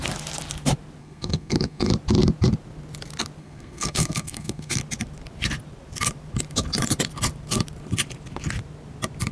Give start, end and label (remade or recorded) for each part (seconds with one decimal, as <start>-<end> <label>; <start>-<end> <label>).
0.0-1.0 recorded; 1.0-1.9 remade; 1.9-3.4 recorded; 3.4-4.8 remade; 4.8-9.3 recorded